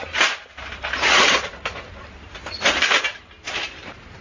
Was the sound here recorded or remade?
recorded